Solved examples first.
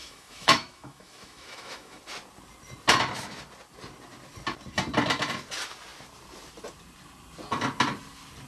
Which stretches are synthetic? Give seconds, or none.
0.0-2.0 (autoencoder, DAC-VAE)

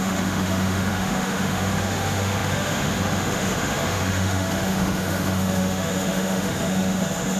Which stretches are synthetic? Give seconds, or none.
0.0-7.4 (autoencoder, DAC-VAE)

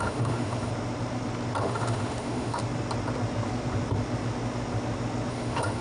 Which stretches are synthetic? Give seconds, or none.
0.0-0.7 (autoencoder, DAC-VAE); 1.6-2.6; 5.3-5.8